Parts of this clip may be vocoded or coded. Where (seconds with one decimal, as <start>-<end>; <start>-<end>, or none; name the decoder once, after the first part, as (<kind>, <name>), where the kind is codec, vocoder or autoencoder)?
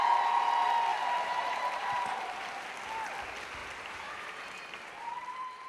0.9-2.3 (vocoder, BigVGAN v2); 3.6-5.7